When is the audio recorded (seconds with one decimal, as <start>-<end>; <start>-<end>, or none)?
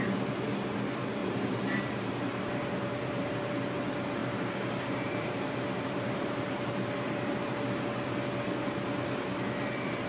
0.0-1.2; 3.5-4.2; 7.5-10.1